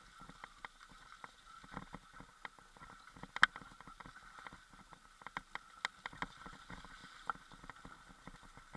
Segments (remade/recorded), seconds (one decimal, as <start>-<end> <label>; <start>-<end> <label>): 0.0-8.8 recorded